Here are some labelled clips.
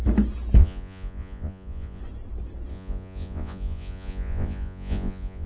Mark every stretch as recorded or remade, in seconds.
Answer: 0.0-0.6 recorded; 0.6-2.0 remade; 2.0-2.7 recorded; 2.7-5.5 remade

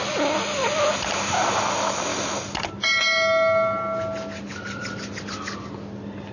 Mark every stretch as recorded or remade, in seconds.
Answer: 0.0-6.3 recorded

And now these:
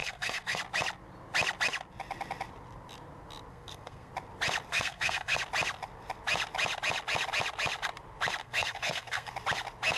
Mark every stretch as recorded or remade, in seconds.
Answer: 0.0-0.6 remade; 0.6-3.5 recorded; 3.5-4.1 remade; 4.1-4.7 recorded; 4.7-5.4 remade; 5.4-8.4 recorded; 8.4-9.3 remade; 9.3-10.0 recorded